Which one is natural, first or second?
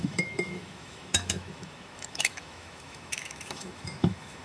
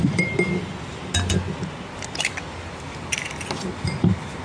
second